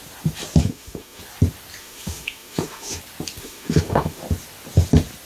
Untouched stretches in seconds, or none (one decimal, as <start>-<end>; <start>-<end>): 0.0-0.6; 1.2-1.8; 3.0-3.4; 4.2-5.3